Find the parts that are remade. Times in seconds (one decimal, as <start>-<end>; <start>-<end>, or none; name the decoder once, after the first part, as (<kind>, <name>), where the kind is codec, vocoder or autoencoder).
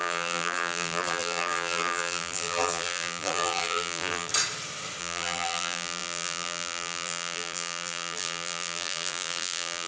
0.0-4.3 (vocoder, BigVGAN v2); 5.0-9.9